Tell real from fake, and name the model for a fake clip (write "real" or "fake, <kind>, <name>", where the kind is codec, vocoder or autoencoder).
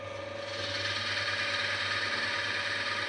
real